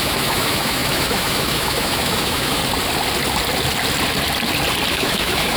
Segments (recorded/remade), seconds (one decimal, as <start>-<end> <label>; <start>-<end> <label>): 0.0-2.6 remade; 2.6-4.9 recorded; 4.9-5.6 remade